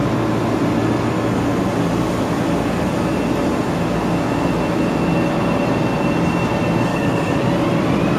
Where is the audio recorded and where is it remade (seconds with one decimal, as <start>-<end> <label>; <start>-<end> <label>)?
0.0-6.9 recorded; 6.9-7.5 remade; 7.5-8.2 recorded